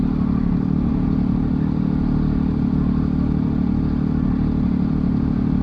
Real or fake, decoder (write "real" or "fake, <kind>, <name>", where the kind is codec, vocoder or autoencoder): real